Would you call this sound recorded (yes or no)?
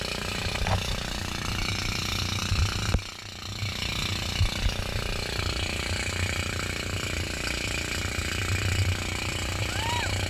yes